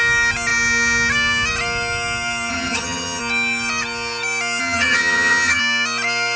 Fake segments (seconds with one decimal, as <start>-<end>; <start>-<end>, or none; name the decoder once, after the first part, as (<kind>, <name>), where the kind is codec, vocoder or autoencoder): 2.5-3.2 (vocoder, HiFi-GAN); 4.6-5.6